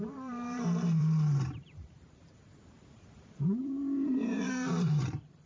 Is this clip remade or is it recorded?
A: remade